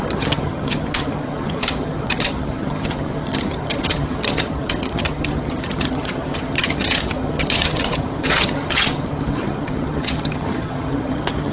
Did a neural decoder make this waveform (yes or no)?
yes